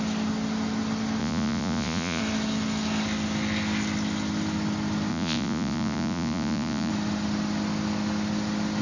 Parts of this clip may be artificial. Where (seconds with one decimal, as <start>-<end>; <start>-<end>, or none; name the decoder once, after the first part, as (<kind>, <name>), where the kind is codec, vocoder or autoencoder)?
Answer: 1.2-2.2 (vocoder, Vocos); 5.1-6.9